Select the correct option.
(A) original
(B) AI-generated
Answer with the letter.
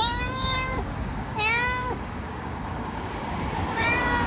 B